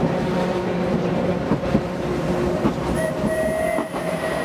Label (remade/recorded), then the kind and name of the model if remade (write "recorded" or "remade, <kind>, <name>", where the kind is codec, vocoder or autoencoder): recorded